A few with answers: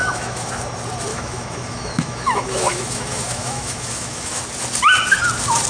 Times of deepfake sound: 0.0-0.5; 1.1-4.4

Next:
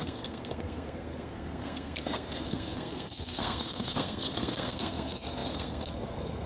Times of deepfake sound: 0.0-6.5

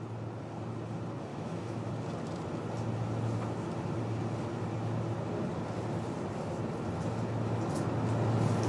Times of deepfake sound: 1.3-1.9

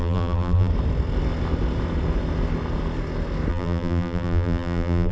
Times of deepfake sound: 0.0-0.7; 3.5-5.1

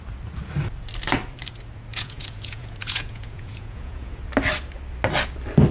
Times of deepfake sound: 1.9-4.2

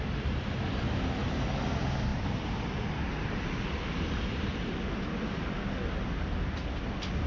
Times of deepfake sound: none

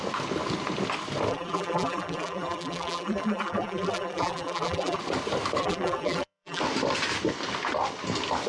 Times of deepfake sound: 1.3-5.0; 5.6-6.6

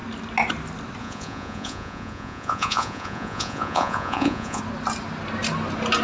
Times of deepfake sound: 1.0-4.6